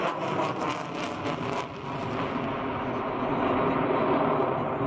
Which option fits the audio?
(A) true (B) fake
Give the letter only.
A